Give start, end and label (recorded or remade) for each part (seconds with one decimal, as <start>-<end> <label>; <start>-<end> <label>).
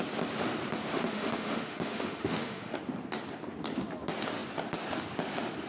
0.0-0.9 recorded; 0.9-2.8 remade; 2.8-5.7 recorded